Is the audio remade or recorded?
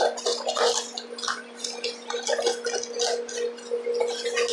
recorded